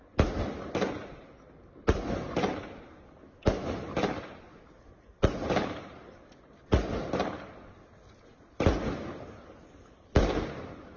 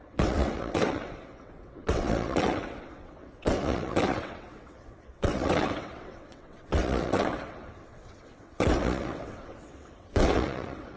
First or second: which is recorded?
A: first